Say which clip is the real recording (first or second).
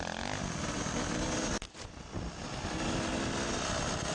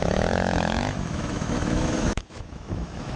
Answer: first